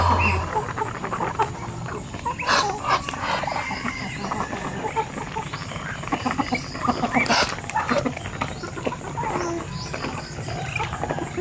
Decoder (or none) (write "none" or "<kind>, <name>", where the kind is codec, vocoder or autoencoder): none